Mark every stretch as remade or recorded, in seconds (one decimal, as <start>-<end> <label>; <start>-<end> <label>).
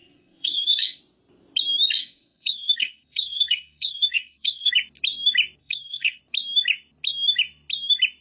0.0-1.0 remade; 1.0-2.0 recorded; 2.0-4.7 remade; 4.7-5.6 recorded; 5.6-6.2 remade; 6.2-8.2 recorded